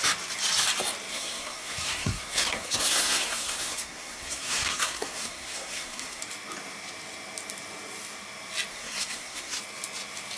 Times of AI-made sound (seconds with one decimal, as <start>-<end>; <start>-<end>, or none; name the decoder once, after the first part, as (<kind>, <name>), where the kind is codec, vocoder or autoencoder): 1.1-6.2 (codec, SNAC); 8.7-9.6